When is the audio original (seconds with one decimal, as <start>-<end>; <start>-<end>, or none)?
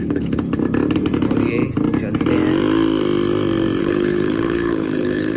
0.6-3.8